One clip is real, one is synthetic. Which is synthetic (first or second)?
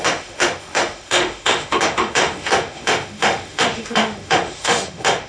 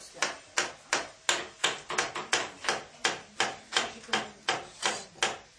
first